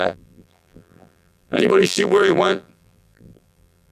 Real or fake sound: fake